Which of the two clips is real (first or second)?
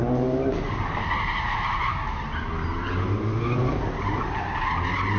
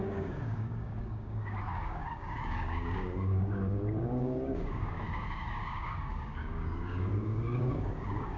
first